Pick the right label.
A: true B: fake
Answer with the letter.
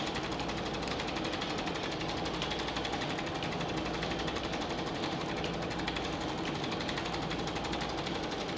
A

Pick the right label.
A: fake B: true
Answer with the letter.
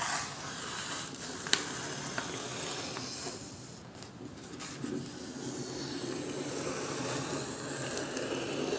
B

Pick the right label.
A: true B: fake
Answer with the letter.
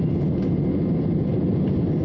A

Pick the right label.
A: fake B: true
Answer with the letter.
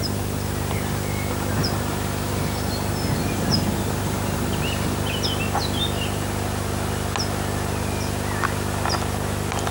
B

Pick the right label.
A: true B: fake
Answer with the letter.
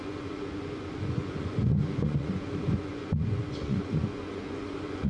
B